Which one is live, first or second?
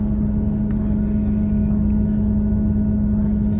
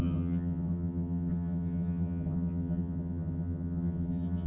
first